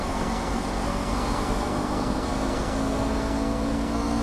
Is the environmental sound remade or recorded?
remade